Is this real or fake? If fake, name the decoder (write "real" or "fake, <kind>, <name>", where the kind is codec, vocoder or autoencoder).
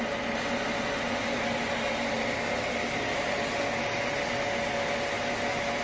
real